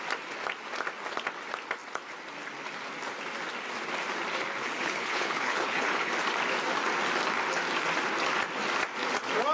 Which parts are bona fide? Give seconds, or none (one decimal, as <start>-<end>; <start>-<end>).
0.0-4.6; 6.1-9.5